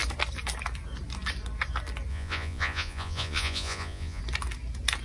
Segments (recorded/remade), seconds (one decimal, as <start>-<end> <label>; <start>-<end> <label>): 0.0-2.1 recorded; 2.1-4.2 remade; 4.2-5.0 recorded